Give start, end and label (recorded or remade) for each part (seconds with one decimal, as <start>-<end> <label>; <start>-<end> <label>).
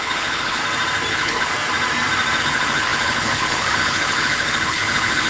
0.0-0.6 remade; 0.6-1.1 recorded; 1.1-1.5 remade; 1.5-2.4 recorded; 2.4-5.3 remade